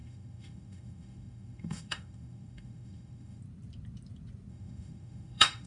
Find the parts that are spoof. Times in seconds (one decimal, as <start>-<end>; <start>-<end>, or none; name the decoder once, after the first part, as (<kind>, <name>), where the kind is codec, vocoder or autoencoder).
0.0-3.4 (autoencoder, DAC-VAE); 4.5-5.7